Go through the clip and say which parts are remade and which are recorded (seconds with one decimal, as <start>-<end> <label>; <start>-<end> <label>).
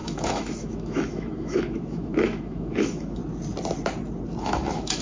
0.0-3.2 remade; 3.2-4.4 recorded; 4.4-5.0 remade